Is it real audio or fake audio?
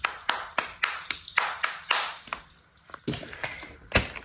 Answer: real